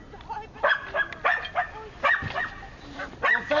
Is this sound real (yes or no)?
yes